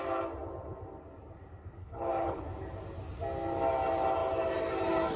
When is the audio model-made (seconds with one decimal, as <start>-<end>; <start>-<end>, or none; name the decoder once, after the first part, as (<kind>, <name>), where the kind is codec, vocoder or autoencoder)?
1.8-2.4 (codec, HILCodec)